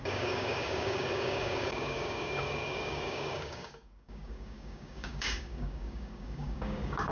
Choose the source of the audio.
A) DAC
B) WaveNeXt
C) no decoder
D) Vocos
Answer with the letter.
A